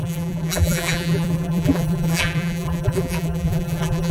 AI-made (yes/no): yes